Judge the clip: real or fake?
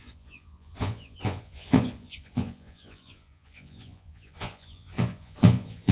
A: fake